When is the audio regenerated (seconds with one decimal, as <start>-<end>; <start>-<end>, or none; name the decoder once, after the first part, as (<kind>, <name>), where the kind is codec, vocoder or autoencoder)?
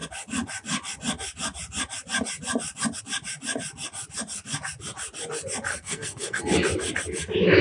5.7-6.4 (codec, SNAC)